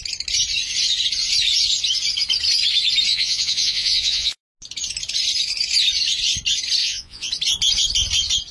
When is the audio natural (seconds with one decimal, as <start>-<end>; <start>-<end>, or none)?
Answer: 0.0-3.1; 4.4-6.8; 7.3-8.5